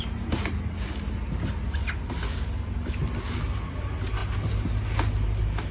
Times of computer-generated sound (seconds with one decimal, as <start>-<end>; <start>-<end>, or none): none